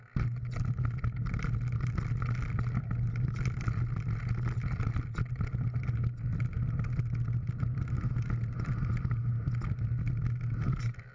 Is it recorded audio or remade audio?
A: recorded